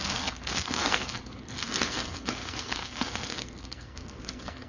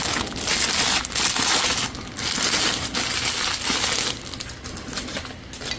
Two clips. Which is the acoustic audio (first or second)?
second